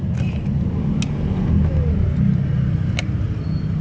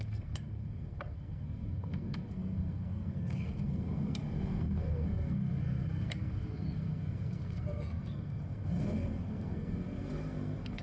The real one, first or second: first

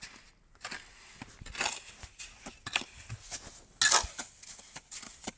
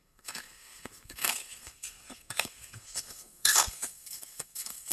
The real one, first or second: first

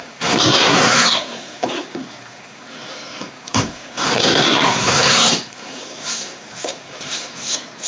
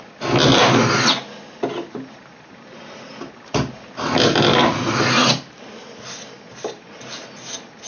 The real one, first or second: second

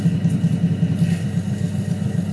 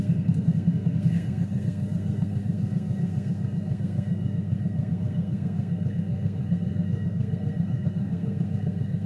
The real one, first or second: first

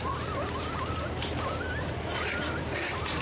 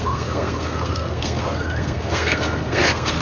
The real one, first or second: first